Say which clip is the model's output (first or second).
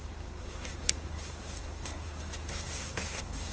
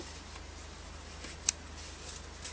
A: first